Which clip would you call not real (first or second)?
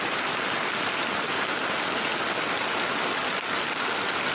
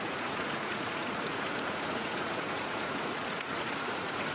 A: second